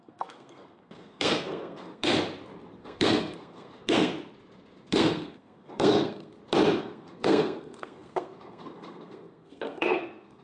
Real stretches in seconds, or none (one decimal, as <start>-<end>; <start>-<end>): 2.1-2.8; 4.1-4.9; 6.3-6.8